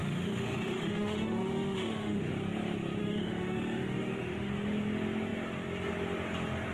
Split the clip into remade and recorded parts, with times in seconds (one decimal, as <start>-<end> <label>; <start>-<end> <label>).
0.0-2.3 remade; 2.3-3.0 recorded; 3.0-4.5 remade; 4.5-6.7 recorded